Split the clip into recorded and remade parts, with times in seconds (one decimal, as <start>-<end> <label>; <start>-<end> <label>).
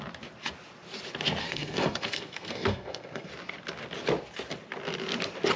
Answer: 0.0-1.4 recorded; 1.4-3.3 remade; 3.3-5.6 recorded